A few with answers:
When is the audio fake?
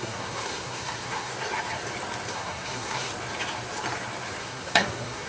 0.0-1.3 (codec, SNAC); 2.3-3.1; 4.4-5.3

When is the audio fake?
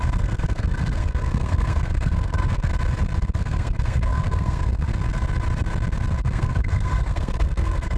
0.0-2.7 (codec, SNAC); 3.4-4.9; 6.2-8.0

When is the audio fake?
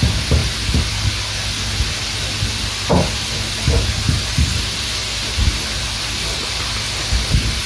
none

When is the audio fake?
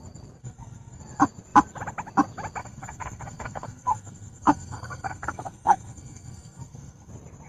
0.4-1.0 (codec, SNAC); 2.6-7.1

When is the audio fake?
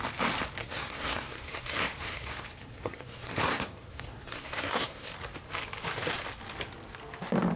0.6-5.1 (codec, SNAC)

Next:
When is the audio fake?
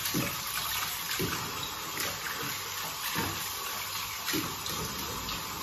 none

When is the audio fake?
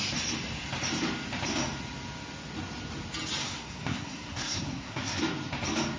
3.4-5.2 (codec, SNAC)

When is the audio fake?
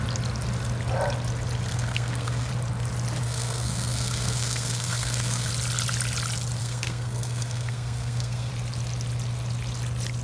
1.7-2.5 (codec, SNAC); 3.2-5.5; 6.6-8.5